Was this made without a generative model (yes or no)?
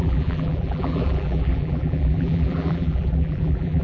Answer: no